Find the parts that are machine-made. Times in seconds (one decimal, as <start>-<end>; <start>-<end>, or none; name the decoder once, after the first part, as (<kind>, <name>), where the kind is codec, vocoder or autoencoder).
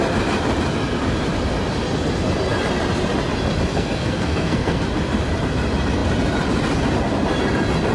3.7-4.8 (codec, SNAC)